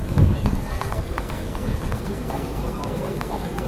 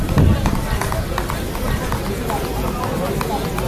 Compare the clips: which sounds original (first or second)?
second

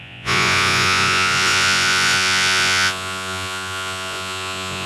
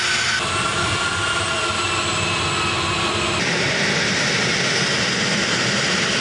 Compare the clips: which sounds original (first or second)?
second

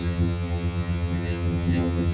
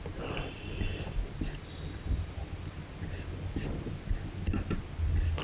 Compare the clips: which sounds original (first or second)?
second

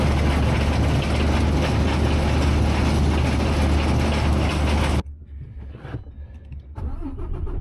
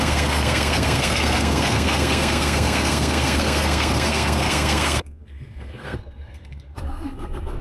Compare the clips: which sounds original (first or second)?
first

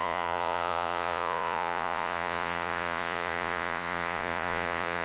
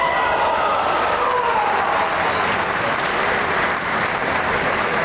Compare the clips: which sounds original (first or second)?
second